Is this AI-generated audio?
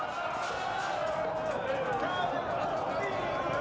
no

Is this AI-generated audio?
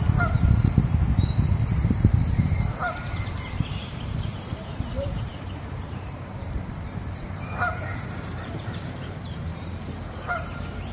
yes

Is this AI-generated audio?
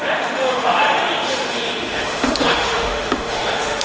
yes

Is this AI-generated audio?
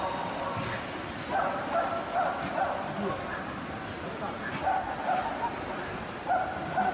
no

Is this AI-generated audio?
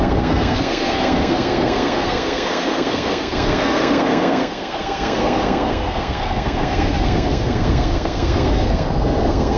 yes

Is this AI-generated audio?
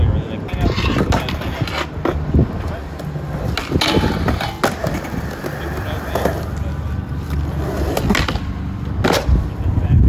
no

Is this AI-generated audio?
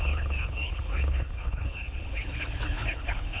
yes